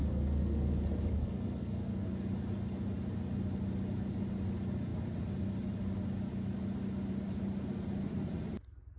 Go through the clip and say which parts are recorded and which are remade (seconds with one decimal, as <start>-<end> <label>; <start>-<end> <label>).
0.0-0.7 remade; 0.7-1.1 recorded; 1.1-2.1 remade; 2.1-9.0 recorded